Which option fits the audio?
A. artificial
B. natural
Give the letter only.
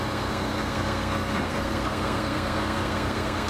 A